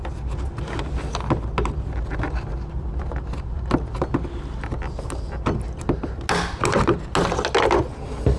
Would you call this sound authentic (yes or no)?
yes